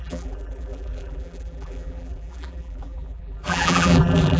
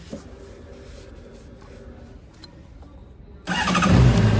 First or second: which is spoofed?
first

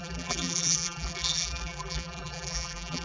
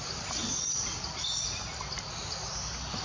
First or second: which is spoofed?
first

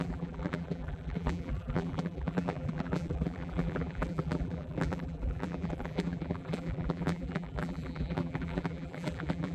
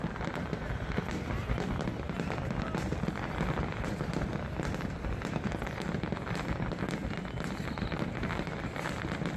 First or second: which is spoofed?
first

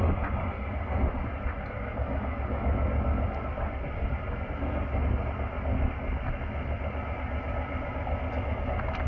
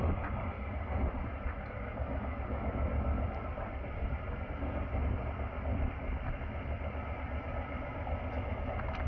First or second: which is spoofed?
second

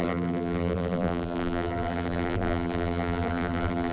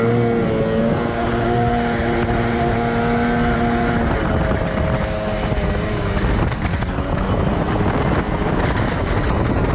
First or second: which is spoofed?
first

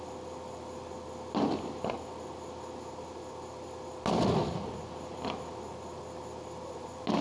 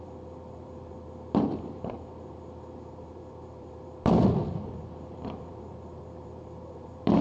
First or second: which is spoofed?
second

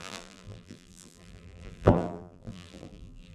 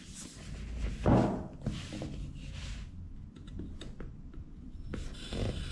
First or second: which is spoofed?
first